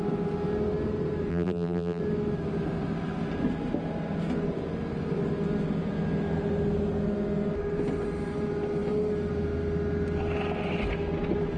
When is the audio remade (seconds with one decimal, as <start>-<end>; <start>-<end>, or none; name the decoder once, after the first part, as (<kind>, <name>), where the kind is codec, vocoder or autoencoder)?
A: 1.3-2.0 (vocoder, BigVGAN v2)

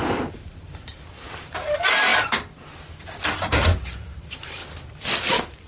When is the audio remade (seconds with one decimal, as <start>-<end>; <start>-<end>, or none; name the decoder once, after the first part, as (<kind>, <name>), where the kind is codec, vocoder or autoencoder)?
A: 0.0-2.1 (vocoder, BigVGAN v2); 3.5-4.6; 5.3-5.7

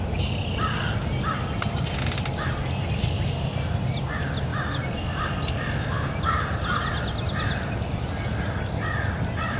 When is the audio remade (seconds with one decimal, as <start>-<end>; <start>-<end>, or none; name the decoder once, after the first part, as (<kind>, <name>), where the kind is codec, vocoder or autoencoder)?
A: none